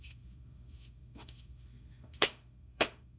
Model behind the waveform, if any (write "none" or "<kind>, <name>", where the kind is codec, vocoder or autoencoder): autoencoder, DAC-VAE